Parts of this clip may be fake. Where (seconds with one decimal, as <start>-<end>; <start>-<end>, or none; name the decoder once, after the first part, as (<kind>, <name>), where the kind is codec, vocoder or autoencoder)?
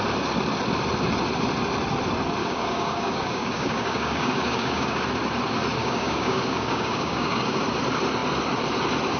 2.4-5.0 (codec, DAC); 5.8-7.6